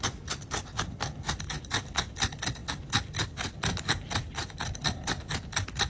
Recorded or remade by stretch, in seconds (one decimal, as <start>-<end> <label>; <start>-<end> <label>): 0.0-5.9 recorded